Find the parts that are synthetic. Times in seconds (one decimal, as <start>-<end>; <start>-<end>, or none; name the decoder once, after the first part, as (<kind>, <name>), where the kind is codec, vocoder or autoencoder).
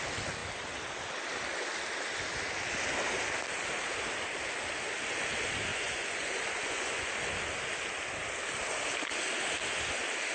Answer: 5.7-7.1 (vocoder, Vocos)